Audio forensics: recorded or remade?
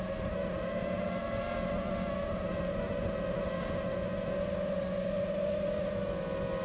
recorded